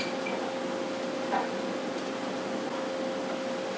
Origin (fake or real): real